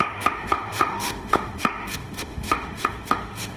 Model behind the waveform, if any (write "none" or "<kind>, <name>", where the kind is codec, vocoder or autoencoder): autoencoder, DAC-VAE